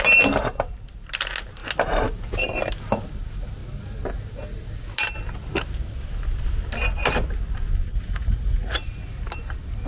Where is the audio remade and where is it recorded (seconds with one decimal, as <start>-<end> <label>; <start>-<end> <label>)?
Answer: 0.0-7.9 recorded; 7.9-9.1 remade; 9.1-9.9 recorded